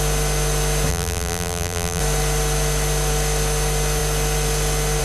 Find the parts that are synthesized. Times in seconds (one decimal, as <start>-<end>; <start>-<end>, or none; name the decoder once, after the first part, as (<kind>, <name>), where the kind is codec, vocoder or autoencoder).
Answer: 0.9-2.0 (vocoder, BigVGAN v2)